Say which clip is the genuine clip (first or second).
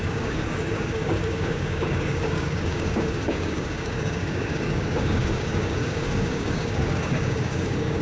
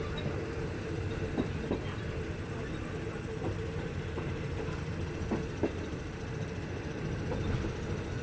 second